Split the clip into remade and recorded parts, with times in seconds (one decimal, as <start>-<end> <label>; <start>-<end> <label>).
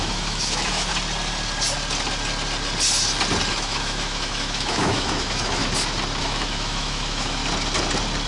0.0-0.9 remade; 0.9-3.5 recorded; 3.5-5.6 remade; 5.6-6.2 recorded; 6.2-7.4 remade; 7.4-8.3 recorded